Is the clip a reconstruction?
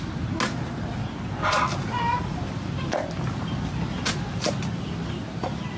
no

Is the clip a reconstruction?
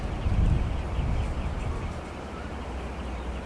no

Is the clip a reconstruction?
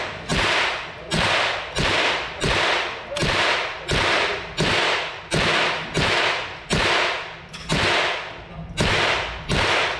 no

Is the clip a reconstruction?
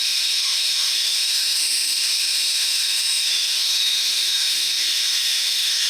yes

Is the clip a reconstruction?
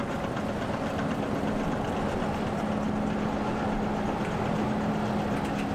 no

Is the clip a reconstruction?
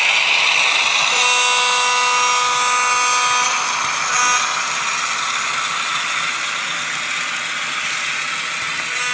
no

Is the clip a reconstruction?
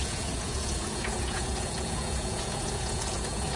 yes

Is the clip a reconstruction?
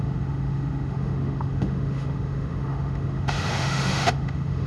yes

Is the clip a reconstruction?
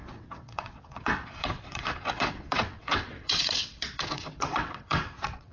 yes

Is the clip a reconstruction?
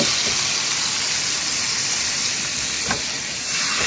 no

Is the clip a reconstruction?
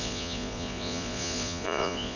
yes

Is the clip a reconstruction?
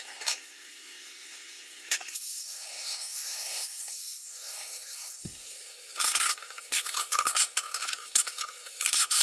yes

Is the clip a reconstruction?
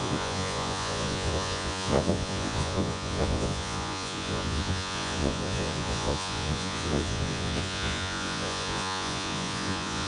yes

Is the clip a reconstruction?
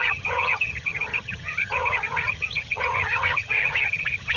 yes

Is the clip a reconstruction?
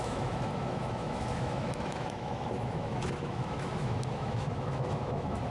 yes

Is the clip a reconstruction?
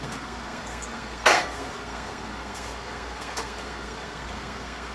yes